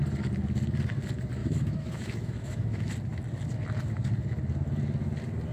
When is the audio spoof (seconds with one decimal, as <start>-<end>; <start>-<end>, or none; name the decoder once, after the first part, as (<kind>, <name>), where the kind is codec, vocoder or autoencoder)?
1.4-2.9 (autoencoder, DAC-VAE)